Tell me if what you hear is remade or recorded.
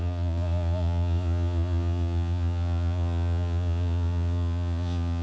remade